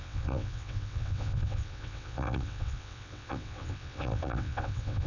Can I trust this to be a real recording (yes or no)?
no